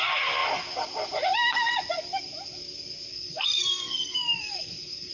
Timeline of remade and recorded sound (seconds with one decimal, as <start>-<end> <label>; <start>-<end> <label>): 0.0-3.1 recorded; 3.1-5.1 remade